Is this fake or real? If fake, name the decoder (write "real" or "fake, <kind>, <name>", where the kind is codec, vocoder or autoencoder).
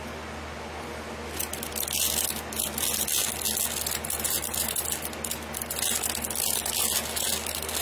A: real